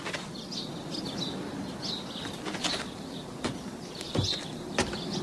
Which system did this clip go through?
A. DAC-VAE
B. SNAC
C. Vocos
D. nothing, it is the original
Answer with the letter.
D